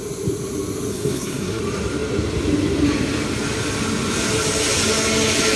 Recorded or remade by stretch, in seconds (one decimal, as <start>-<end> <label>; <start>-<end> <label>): 0.0-0.9 recorded; 0.9-1.6 remade; 1.6-5.6 recorded